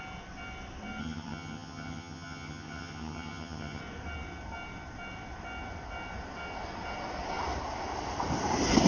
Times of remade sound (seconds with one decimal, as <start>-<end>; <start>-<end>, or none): 1.0-3.8